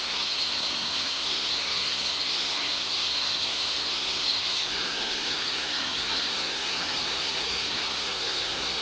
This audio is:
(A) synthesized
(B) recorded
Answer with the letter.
A